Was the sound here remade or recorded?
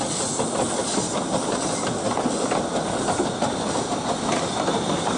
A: recorded